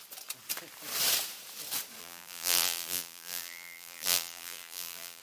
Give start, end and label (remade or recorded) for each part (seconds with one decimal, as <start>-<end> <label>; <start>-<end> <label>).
0.0-2.0 recorded; 2.0-5.2 remade